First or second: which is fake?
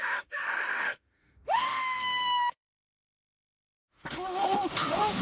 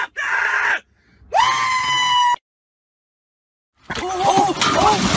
first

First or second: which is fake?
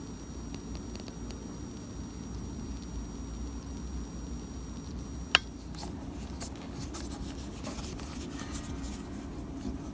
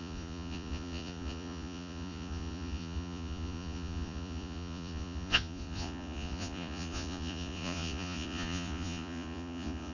second